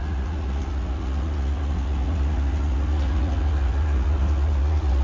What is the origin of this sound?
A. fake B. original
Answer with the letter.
A